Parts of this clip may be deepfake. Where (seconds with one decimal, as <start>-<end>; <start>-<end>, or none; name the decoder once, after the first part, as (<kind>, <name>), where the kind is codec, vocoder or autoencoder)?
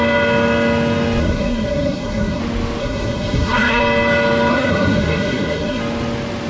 1.2-2.4 (codec, SNAC); 2.8-3.8; 4.5-5.8